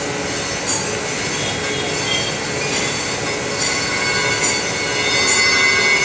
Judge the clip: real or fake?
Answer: real